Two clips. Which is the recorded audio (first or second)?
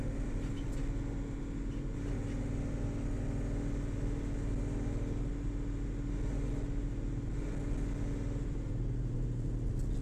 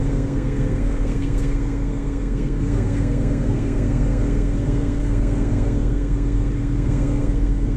first